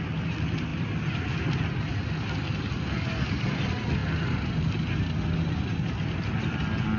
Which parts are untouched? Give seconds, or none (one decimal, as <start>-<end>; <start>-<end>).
0.0-7.0